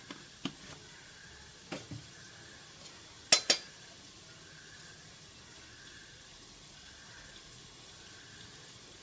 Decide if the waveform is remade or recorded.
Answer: recorded